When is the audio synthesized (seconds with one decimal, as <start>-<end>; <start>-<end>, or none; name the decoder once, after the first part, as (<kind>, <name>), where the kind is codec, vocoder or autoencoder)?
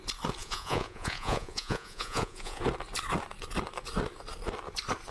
0.4-2.6 (vocoder, Vocos)